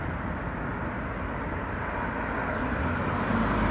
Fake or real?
real